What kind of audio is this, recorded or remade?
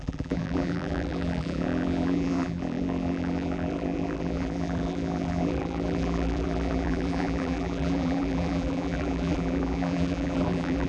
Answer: remade